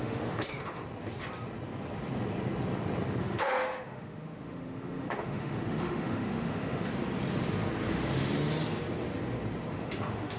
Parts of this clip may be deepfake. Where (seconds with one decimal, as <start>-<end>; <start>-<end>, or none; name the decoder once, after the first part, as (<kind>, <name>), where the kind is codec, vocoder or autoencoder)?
0.0-0.8 (autoencoder, DAC-VAE); 3.2-6.9; 7.9-8.3; 9.7-10.4